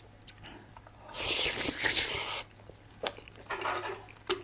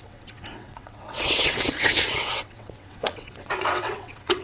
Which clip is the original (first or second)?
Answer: first